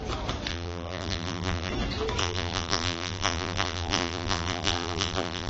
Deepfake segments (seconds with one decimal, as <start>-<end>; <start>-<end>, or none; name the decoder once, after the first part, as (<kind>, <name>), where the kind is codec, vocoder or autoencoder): 0.5-1.7 (vocoder, BigVGAN v2); 2.2-5.5